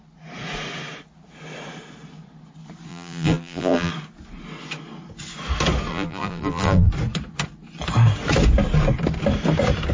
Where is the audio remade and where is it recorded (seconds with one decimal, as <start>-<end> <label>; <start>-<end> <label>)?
0.0-2.9 recorded; 2.9-3.9 remade; 3.9-5.9 recorded; 5.9-6.9 remade; 6.9-9.9 recorded